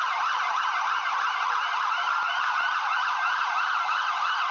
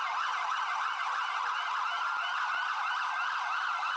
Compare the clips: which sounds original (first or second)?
second